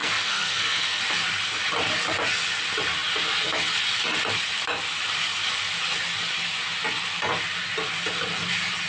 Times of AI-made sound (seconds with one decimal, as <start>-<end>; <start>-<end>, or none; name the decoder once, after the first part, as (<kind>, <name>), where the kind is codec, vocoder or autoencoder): 0.0-1.0 (codec, SNAC)